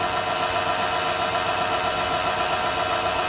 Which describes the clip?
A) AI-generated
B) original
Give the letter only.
B